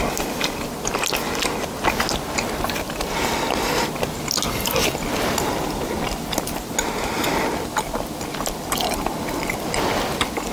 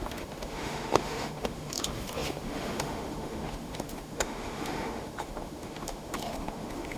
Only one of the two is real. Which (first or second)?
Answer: first